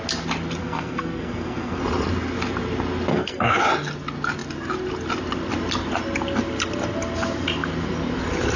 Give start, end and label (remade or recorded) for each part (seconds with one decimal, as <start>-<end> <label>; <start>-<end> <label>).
0.0-0.6 recorded; 0.6-1.8 remade; 1.8-3.1 recorded; 3.1-3.6 remade; 3.6-8.6 recorded